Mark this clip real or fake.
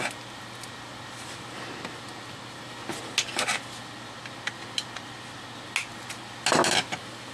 real